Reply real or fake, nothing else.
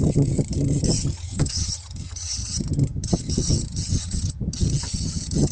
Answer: fake